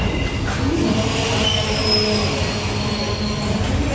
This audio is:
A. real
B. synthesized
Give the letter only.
A